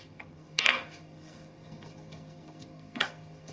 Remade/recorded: remade